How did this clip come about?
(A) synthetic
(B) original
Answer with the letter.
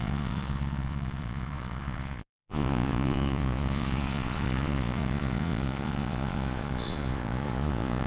A